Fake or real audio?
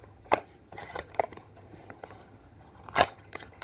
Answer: fake